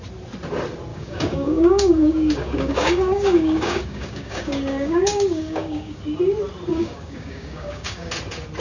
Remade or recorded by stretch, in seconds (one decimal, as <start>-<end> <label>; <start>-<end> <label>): 0.0-0.9 recorded; 0.9-6.0 remade; 6.0-6.7 recorded; 6.7-8.1 remade; 8.1-8.6 recorded